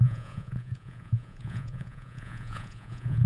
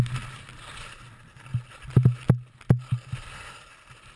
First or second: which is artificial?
first